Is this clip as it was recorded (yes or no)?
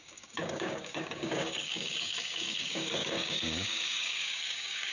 no